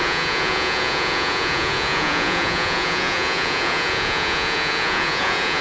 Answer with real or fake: fake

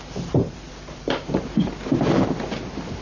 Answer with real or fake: real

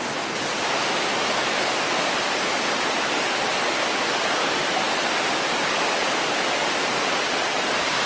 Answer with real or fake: real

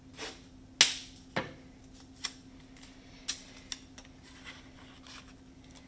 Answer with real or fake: real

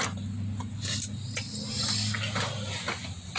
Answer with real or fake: real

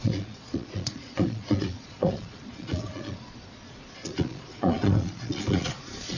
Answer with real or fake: fake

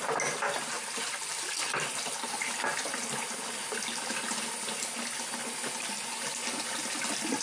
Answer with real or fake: real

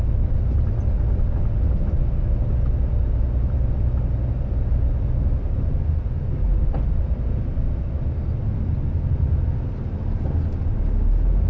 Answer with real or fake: real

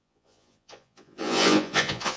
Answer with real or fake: fake